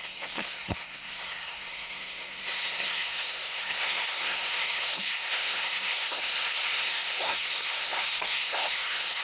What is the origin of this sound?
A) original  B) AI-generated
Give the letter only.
B